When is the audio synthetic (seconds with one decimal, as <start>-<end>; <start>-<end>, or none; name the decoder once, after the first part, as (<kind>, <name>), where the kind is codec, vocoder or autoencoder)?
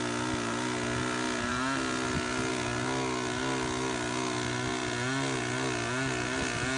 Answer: none